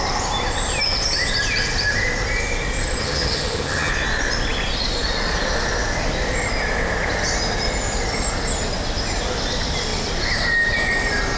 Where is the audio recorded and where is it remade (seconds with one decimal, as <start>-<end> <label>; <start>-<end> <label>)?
0.0-3.0 recorded; 3.0-3.9 remade; 3.9-11.4 recorded